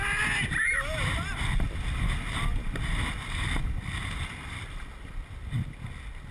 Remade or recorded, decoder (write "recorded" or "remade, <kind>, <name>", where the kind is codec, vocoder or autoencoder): recorded